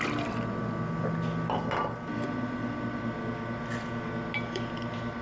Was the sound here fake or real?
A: real